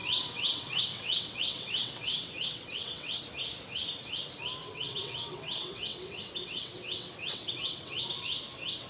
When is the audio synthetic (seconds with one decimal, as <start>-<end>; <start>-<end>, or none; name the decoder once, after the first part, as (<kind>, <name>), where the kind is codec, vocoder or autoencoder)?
0.0-3.2 (vocoder, WaveNeXt); 4.6-8.1